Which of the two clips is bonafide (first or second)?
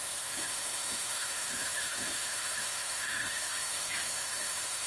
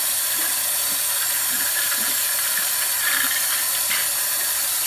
second